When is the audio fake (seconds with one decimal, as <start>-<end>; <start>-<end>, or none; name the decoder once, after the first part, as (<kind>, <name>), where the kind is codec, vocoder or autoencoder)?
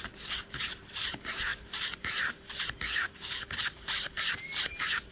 0.0-5.1 (vocoder, BigVGAN v2)